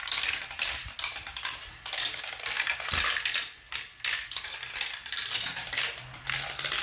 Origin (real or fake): real